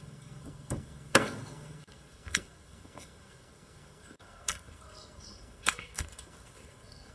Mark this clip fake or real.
fake